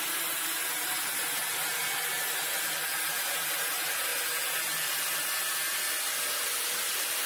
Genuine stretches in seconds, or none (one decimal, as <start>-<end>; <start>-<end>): 0.0-7.3